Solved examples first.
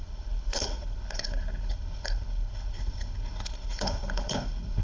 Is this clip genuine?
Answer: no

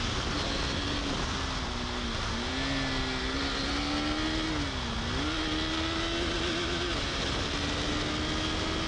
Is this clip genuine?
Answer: yes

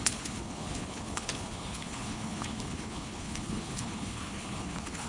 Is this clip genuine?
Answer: no